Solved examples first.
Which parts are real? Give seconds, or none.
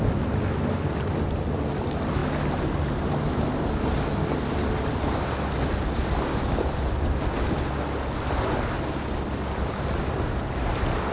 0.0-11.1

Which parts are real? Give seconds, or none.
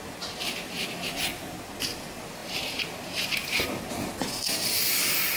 0.0-5.4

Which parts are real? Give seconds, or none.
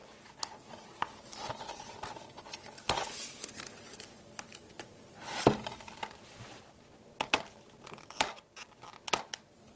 0.0-9.8